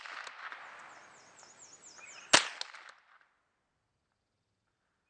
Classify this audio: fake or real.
real